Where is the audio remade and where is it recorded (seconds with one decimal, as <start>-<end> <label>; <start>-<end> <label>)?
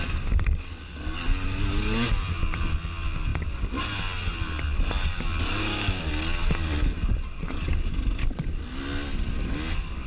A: 0.0-5.6 recorded; 5.6-6.1 remade; 6.1-10.1 recorded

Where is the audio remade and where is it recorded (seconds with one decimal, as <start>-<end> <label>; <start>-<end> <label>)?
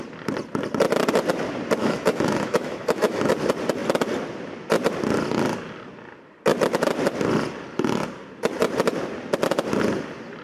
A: 0.0-1.8 recorded; 1.8-3.3 remade; 3.3-10.4 recorded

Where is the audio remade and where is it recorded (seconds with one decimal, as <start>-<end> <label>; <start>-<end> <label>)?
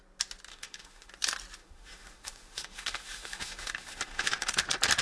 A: 0.0-0.5 recorded; 0.5-1.1 remade; 1.1-1.6 recorded; 1.6-4.6 remade; 4.6-5.0 recorded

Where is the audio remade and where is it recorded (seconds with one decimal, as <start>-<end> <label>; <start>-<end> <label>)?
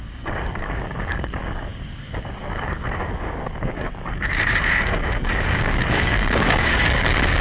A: 0.0-7.4 remade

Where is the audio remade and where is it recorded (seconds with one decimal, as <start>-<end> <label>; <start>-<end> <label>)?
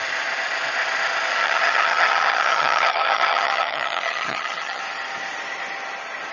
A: 0.0-1.3 recorded; 1.3-4.8 remade; 4.8-6.3 recorded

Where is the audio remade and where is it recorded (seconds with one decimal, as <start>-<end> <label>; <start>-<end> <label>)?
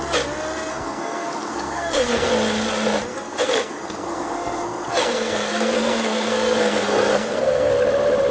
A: 0.0-0.7 recorded; 0.7-2.3 remade; 2.3-3.1 recorded; 3.1-7.7 remade; 7.7-8.3 recorded